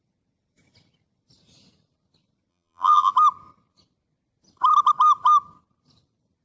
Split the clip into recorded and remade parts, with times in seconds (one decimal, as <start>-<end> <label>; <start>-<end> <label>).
0.0-2.5 recorded; 2.5-3.1 remade; 3.1-6.4 recorded